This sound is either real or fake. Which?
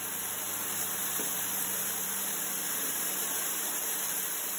fake